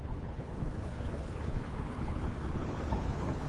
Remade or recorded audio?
remade